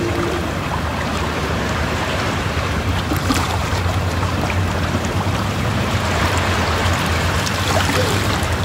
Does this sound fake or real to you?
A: fake